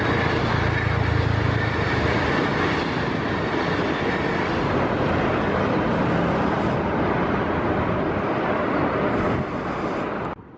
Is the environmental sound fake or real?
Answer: real